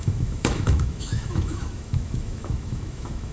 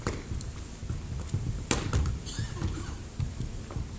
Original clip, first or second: second